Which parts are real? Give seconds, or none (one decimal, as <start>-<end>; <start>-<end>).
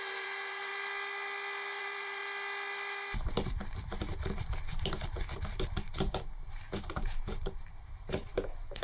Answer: 0.7-1.8; 2.2-6.0